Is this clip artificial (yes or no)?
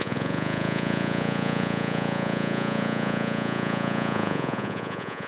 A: yes